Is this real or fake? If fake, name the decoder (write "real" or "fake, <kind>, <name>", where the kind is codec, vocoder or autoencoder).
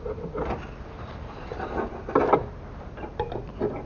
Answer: real